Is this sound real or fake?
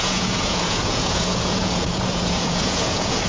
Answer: fake